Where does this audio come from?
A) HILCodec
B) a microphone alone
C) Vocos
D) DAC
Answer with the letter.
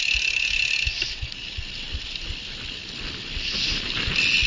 B